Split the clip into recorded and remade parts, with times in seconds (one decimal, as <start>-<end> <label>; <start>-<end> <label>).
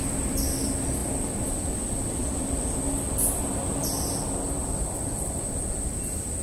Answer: 0.0-4.6 recorded; 4.6-5.3 remade; 5.3-6.4 recorded